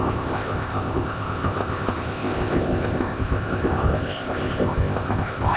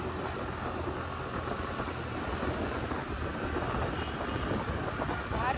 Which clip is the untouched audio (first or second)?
second